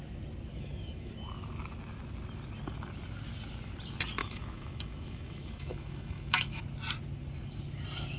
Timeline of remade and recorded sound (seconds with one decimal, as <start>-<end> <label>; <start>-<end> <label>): 0.0-0.5 recorded; 0.5-1.1 remade; 1.1-4.2 recorded; 4.2-6.6 remade; 6.6-8.2 recorded